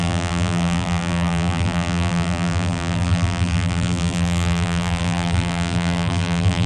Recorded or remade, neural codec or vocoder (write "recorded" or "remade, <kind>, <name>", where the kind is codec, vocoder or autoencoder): remade, vocoder, BigVGAN v2